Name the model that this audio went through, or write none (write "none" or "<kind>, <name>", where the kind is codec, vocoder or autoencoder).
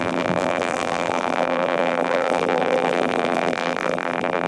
vocoder, BigVGAN v2